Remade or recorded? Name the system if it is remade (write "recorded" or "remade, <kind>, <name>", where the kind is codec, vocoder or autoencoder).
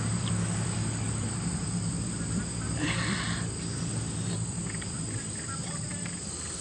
remade, vocoder, BigVGAN v2